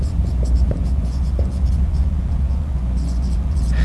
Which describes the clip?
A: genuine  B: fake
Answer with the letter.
B